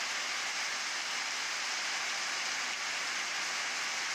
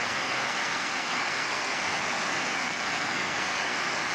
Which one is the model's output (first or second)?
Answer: second